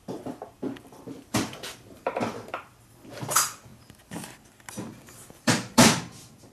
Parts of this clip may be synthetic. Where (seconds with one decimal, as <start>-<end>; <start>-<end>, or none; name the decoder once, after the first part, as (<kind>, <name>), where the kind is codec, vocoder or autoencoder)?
0.0-3.7 (vocoder, BigVGAN v2); 5.0-6.5